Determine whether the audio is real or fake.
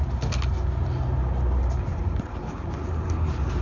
real